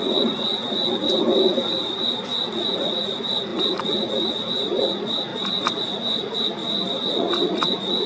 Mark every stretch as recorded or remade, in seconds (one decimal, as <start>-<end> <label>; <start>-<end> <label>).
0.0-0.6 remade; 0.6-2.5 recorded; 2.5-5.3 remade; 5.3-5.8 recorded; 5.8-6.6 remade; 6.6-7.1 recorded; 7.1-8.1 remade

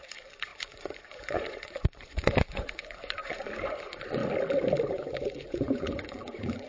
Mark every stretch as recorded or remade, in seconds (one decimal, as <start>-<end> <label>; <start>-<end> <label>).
0.0-4.2 remade; 4.2-4.9 recorded; 4.9-6.7 remade

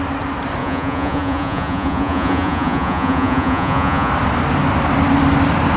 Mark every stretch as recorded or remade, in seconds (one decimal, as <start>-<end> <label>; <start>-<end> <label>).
0.0-0.6 recorded; 0.6-4.1 remade; 4.1-5.8 recorded

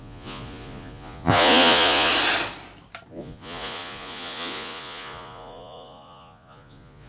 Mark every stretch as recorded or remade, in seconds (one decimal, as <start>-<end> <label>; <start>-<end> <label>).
0.0-2.1 remade; 2.1-3.1 recorded; 3.1-7.1 remade

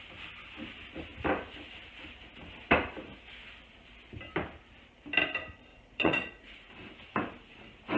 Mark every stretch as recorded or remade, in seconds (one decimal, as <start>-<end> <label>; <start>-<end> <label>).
0.0-5.7 recorded; 5.7-6.7 remade; 6.7-8.0 recorded